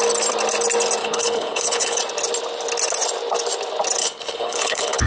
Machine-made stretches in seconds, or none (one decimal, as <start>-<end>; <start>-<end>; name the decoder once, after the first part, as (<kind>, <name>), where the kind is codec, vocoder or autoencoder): 1.0-2.0 (codec, HILCodec); 4.0-5.1